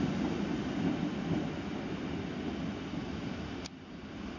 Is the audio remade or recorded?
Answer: recorded